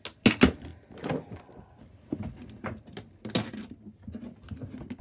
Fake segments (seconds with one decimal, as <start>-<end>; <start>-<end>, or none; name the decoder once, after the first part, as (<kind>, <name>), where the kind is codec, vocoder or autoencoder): none